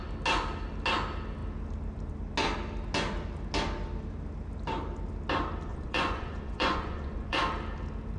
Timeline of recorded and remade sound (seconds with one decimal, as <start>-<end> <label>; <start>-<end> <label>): 0.0-5.7 recorded; 5.7-7.4 remade; 7.4-8.2 recorded

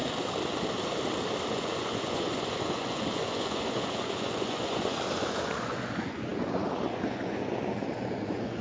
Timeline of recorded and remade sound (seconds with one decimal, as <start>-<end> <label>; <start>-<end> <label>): 0.0-1.5 recorded; 1.5-8.6 remade